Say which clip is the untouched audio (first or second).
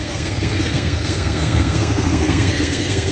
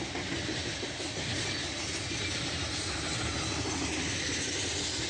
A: second